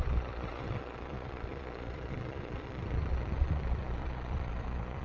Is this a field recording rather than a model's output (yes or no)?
no